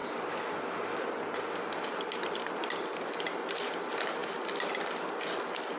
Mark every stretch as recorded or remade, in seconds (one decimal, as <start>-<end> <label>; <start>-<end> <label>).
0.0-5.8 remade